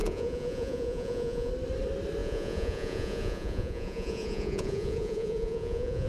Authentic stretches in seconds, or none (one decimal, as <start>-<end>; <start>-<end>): 1.5-2.2